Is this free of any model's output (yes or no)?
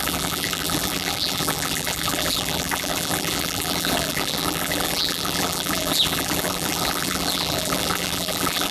no